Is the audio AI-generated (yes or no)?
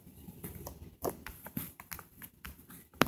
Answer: no